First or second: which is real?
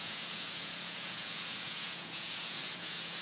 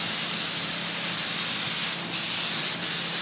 second